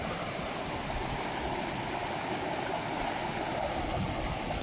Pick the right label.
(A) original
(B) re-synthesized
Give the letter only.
A